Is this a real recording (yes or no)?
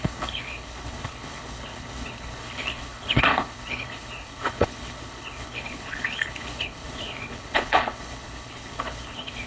no